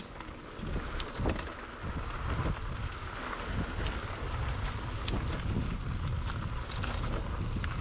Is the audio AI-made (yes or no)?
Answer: no